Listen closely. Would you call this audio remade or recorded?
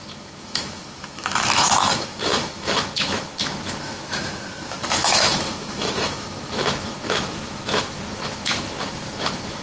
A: remade